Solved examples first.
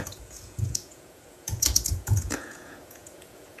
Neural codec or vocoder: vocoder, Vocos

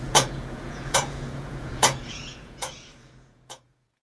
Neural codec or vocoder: vocoder, Vocos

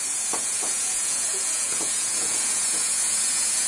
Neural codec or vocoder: vocoder, Vocos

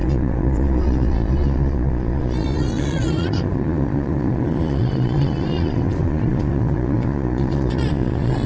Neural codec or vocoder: vocoder, Vocos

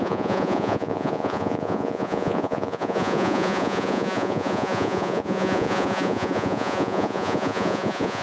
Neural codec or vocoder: vocoder, Vocos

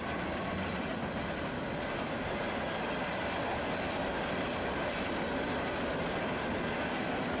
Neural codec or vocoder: none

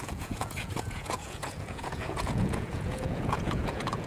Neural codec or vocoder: vocoder, Vocos